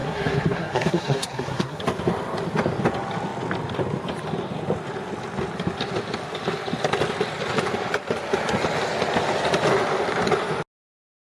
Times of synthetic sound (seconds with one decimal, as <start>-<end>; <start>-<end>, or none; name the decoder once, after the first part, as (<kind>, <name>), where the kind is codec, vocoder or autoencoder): 0.0-1.8 (codec, SNAC)